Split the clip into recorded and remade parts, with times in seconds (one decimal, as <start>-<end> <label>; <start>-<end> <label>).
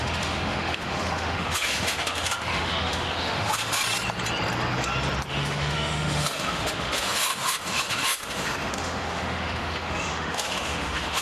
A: 0.0-3.8 remade; 3.8-5.3 recorded; 5.3-11.2 remade